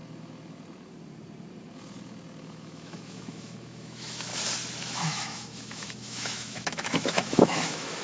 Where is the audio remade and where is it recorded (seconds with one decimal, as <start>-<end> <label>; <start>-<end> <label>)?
0.0-2.4 recorded; 2.4-4.3 remade; 4.3-4.8 recorded; 4.8-8.0 remade